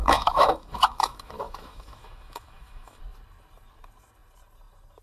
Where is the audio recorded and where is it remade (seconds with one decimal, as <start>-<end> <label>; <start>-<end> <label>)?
0.0-3.0 remade; 3.0-5.0 recorded